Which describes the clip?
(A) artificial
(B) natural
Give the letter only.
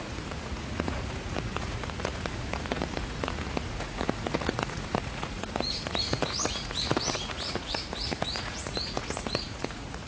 A